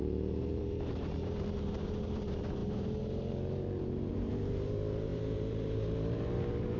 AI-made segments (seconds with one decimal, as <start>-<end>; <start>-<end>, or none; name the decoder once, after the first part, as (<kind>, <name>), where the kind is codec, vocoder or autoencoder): 0.0-6.8 (vocoder, BigVGAN v2)